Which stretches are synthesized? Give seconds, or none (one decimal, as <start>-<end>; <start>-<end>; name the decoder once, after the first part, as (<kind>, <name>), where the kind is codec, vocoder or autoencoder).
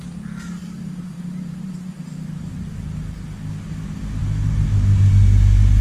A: 0.6-2.5 (vocoder, BigVGAN v2)